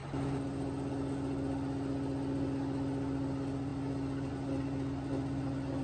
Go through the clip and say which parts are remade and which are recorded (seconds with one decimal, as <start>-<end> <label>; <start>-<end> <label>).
0.0-5.8 recorded